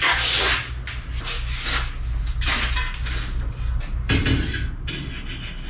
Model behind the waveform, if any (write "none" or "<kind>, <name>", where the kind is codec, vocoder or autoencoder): none